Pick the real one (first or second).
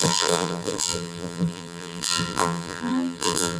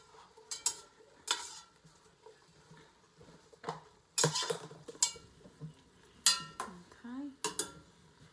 second